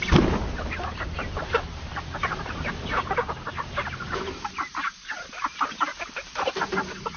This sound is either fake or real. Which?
fake